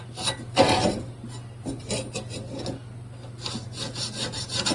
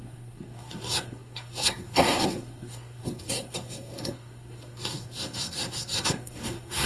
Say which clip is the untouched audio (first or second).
first